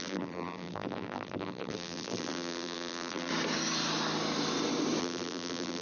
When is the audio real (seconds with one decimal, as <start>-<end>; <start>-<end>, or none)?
3.3-5.0